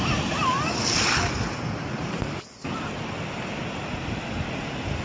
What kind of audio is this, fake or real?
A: real